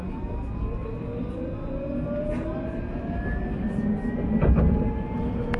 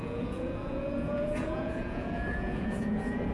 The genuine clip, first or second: first